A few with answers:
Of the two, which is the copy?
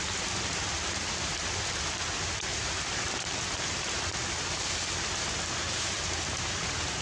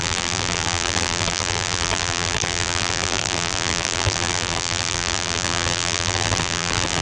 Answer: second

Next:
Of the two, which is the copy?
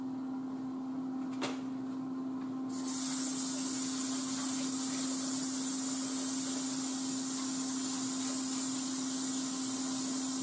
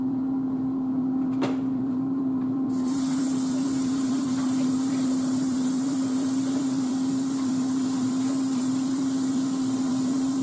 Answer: second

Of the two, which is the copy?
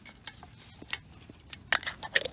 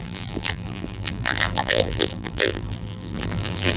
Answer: second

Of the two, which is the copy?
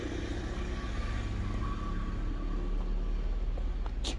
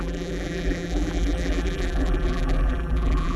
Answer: second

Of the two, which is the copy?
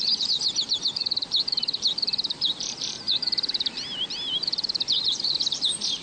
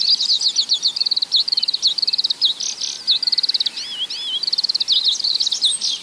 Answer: first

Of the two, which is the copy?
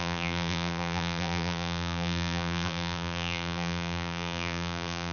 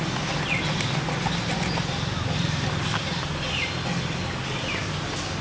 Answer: first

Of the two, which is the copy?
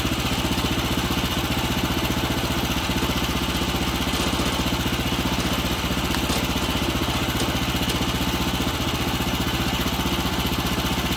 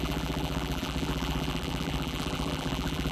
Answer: second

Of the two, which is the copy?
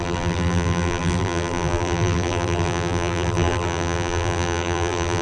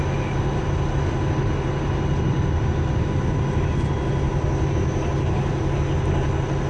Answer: first